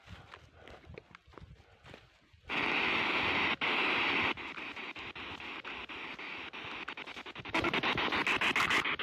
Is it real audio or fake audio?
real